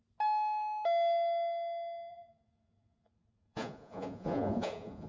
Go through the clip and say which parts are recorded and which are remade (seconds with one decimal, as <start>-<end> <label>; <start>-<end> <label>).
0.0-2.1 recorded; 2.1-5.1 remade